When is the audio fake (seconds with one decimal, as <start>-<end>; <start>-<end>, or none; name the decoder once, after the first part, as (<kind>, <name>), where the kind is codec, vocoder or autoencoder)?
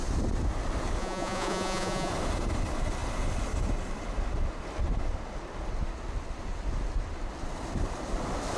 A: 1.0-2.1 (vocoder, Vocos)